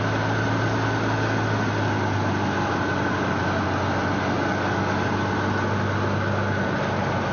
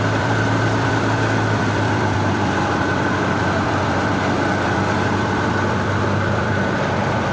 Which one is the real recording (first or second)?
first